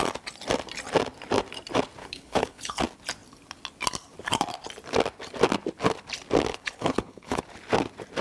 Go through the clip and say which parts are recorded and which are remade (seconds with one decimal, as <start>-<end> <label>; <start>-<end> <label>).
0.0-2.0 recorded; 2.0-2.8 remade; 2.8-6.5 recorded; 6.5-7.4 remade; 7.4-8.2 recorded